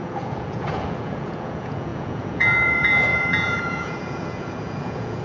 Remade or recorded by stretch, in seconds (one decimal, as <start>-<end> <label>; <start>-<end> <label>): 0.0-5.2 remade